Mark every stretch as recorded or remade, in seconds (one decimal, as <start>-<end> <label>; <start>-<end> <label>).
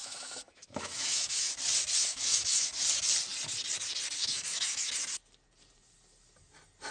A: 0.0-1.5 remade; 1.5-2.0 recorded; 2.0-2.7 remade; 2.7-4.2 recorded; 4.2-4.9 remade; 4.9-6.9 recorded